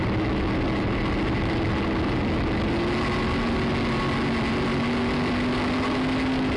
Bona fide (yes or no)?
yes